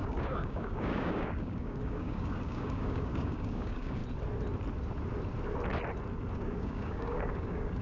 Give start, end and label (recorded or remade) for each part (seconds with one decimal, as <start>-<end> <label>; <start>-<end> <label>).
0.0-4.0 remade; 4.0-6.4 recorded; 6.4-7.8 remade